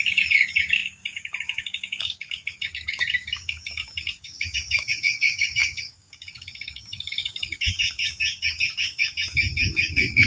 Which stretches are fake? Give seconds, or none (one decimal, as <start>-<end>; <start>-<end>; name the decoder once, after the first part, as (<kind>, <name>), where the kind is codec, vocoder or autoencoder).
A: 0.0-10.3 (codec, DAC)